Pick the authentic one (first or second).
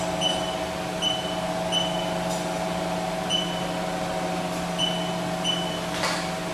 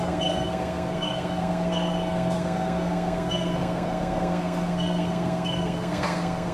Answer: first